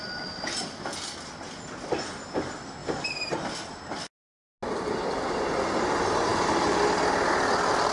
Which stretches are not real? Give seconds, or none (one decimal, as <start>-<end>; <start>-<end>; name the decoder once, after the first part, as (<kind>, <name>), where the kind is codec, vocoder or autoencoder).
2.8-3.3 (vocoder, BigVGAN v2)